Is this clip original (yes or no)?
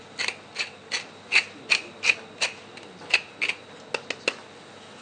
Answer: yes